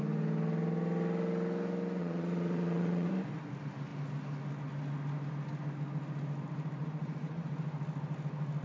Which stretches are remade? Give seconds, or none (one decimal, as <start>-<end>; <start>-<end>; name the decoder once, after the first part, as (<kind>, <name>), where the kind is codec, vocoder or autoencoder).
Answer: 2.0-3.1 (vocoder, Vocos); 6.8-7.5